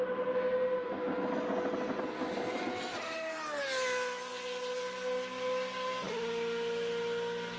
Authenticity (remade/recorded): recorded